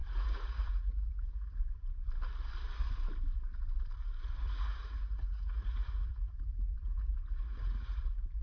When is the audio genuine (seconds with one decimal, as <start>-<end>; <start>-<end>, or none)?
1.6-4.4; 8.0-8.4

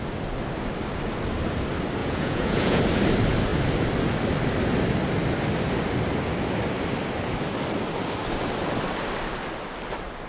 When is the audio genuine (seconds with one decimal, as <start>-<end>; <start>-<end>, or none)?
0.0-2.0; 2.8-10.3

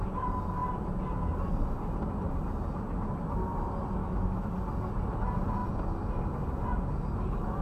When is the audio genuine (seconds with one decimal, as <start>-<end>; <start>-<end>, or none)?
0.0-4.0; 4.5-7.6

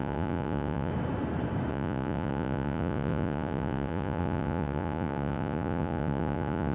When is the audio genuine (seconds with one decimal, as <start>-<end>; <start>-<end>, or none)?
0.9-1.7

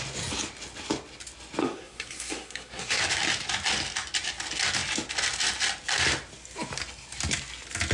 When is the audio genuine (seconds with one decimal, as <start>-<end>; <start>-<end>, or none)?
0.0-1.6; 3.0-7.9

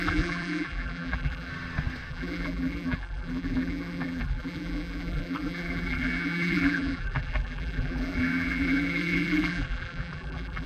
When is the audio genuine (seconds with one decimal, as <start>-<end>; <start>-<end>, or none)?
1.5-2.1

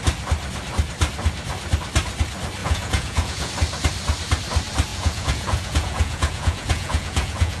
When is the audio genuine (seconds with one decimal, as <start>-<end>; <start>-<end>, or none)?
0.0-2.6; 3.5-4.9